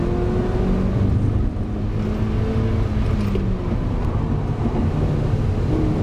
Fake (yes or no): no